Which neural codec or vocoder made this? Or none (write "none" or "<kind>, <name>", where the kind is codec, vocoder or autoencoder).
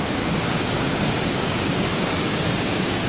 codec, DAC